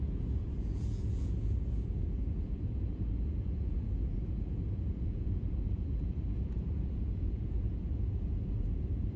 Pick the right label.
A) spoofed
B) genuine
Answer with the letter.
A